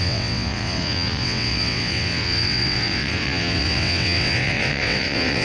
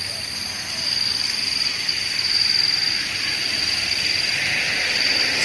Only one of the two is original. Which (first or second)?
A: second